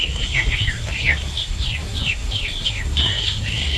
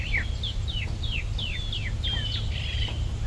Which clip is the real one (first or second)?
second